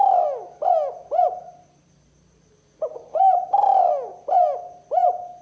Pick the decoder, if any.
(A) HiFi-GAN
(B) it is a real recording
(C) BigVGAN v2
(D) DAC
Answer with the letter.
B